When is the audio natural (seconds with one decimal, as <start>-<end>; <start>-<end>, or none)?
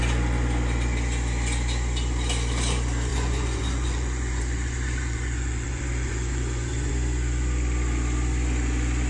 0.0-3.1; 6.9-9.1